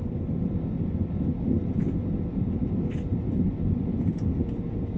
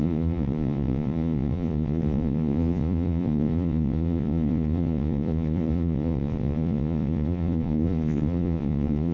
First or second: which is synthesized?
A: second